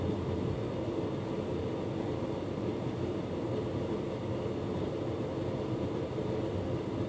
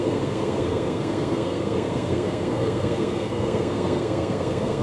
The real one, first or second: first